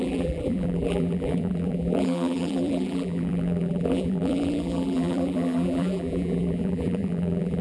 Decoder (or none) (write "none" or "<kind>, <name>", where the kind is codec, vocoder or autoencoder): vocoder, BigVGAN v2